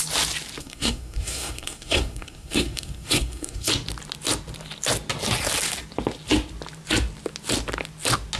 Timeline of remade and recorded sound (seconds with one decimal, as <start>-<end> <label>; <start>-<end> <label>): 0.0-0.6 recorded; 0.6-3.7 remade; 3.7-8.4 recorded

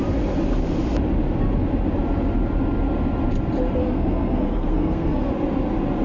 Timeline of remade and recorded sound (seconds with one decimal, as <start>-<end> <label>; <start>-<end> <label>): 0.0-3.8 recorded; 3.8-5.3 remade; 5.3-6.0 recorded

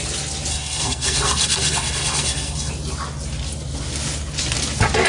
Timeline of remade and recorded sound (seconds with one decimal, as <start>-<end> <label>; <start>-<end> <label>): 0.0-0.5 recorded; 0.5-2.7 remade; 2.7-5.1 recorded

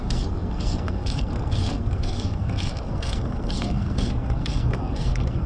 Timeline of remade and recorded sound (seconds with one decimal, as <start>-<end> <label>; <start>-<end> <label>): 0.0-5.5 remade

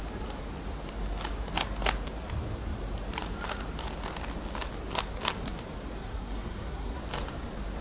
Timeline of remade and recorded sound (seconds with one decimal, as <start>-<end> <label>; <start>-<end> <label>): 0.0-6.0 recorded; 6.0-7.0 remade; 7.0-7.8 recorded

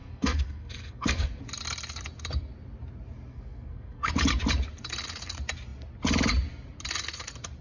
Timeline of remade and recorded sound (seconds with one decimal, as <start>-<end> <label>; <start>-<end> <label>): 0.0-1.4 remade; 1.4-3.3 recorded; 3.3-4.1 remade; 4.1-7.6 recorded

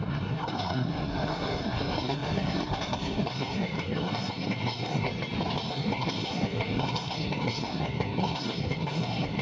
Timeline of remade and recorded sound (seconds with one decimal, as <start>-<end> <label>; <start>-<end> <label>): 0.0-5.1 remade; 5.1-5.7 recorded; 5.7-9.4 remade

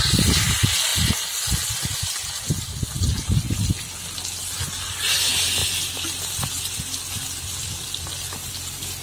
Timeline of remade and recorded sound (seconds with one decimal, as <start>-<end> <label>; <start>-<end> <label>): 0.0-9.0 recorded